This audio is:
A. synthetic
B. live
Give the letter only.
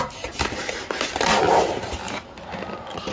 B